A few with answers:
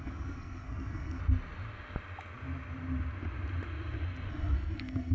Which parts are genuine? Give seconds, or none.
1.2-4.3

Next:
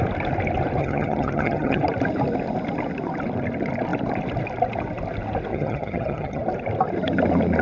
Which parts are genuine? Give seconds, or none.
0.0-0.8; 1.8-5.5; 6.4-7.6